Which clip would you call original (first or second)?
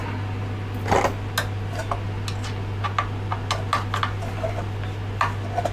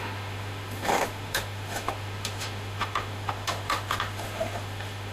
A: first